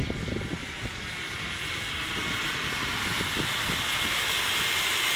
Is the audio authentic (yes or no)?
yes